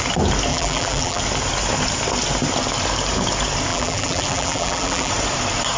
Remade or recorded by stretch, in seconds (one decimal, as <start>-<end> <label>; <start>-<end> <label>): 0.0-0.5 recorded; 0.5-1.2 remade; 1.2-3.7 recorded; 3.7-5.1 remade; 5.1-5.8 recorded